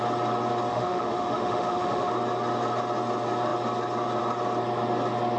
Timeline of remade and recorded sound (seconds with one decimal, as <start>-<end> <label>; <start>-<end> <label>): 0.0-0.7 recorded; 0.7-2.1 remade; 2.1-5.4 recorded